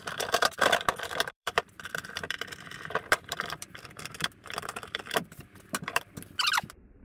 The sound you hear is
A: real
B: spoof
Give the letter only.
B